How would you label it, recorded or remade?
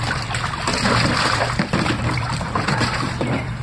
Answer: remade